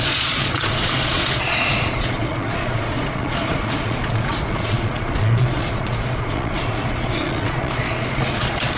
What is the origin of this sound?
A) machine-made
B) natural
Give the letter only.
A